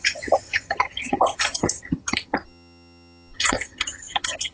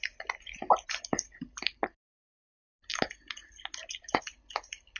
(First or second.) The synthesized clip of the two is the first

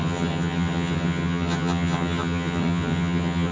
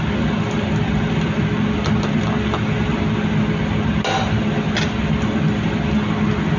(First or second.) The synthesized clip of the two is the first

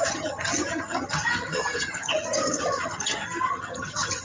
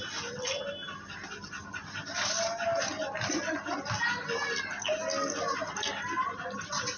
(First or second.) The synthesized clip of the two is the first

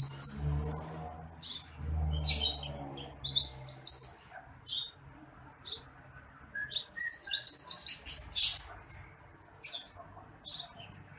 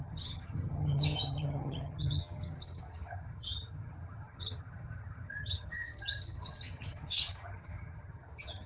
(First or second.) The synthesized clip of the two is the second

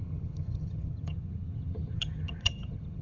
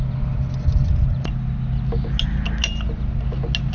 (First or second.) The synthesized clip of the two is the first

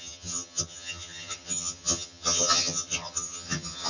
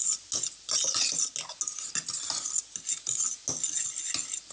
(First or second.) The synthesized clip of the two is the first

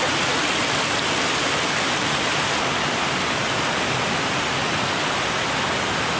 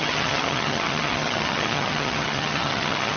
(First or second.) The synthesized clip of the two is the second